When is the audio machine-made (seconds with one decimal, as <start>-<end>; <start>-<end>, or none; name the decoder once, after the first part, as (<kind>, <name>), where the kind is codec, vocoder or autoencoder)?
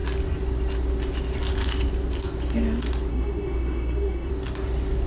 3.1-4.3 (codec, SNAC)